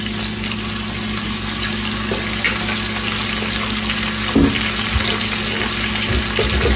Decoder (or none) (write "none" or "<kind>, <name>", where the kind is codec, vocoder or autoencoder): none